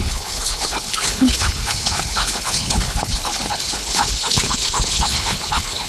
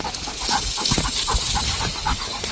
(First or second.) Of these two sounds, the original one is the second